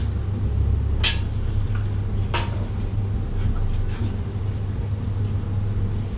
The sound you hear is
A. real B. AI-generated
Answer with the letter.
A